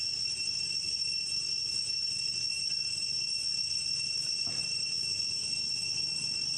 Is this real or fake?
real